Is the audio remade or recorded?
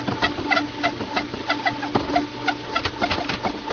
recorded